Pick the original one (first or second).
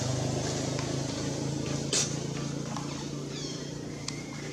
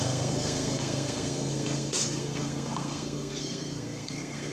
first